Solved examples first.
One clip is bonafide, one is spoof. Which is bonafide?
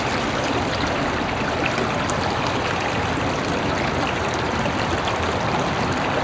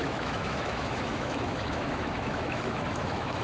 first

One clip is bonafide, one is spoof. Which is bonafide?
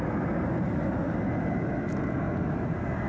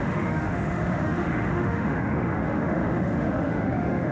first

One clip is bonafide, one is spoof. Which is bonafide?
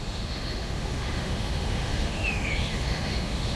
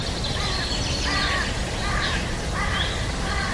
second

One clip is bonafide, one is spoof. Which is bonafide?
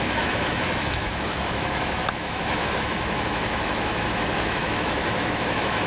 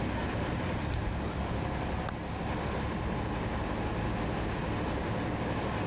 second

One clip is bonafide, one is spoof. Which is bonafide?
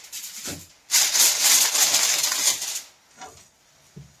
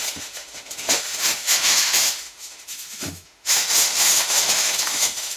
first